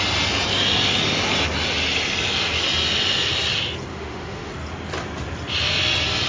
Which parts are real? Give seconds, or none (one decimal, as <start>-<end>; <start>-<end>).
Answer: 0.0-3.9; 4.5-6.3